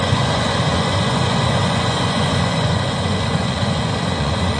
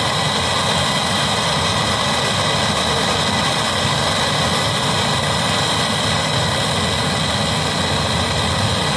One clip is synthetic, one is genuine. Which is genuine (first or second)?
second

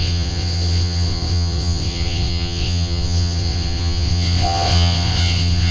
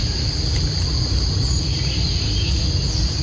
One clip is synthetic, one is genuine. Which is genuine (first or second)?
second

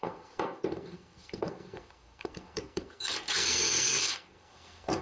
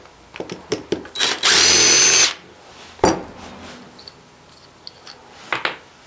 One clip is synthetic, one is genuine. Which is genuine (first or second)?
second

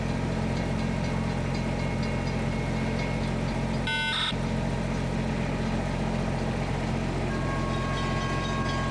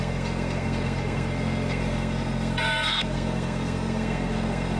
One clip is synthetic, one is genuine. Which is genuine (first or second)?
first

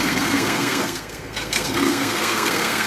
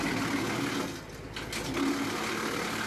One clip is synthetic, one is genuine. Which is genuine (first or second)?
second